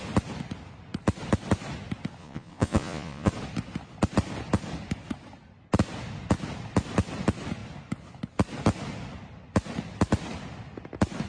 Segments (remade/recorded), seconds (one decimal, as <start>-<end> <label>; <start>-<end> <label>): 0.0-2.2 recorded; 2.2-3.3 remade; 3.3-11.3 recorded